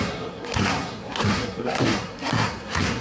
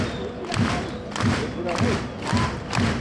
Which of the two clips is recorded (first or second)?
second